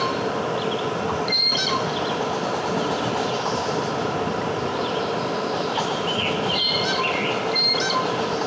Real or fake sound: real